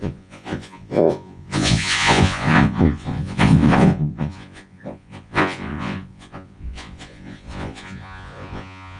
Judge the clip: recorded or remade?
remade